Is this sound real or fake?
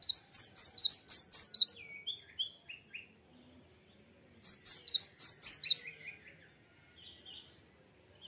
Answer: real